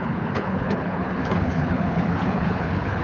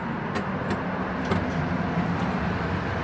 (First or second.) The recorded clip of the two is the second